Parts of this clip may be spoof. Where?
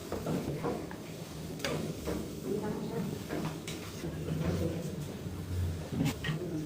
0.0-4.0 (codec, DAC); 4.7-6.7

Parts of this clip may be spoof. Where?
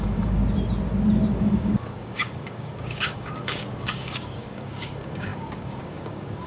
0.0-0.4 (codec, DAC); 1.4-6.5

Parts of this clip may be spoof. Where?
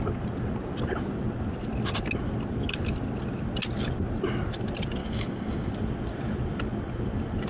5.0-5.7 (codec, DAC)